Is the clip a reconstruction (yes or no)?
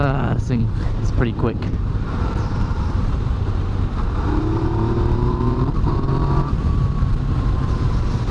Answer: yes